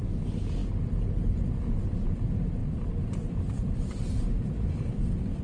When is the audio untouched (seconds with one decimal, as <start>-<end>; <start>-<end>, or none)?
0.0-2.6; 5.0-5.4